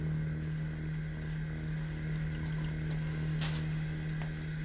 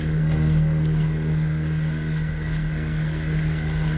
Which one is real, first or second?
first